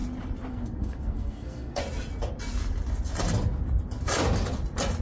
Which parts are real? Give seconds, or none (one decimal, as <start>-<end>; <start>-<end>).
0.0-0.5; 1.8-5.0